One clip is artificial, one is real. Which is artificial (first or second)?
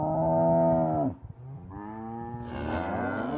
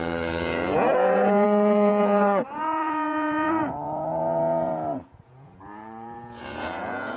second